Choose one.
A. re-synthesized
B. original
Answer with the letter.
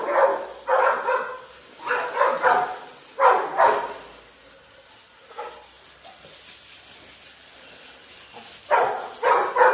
B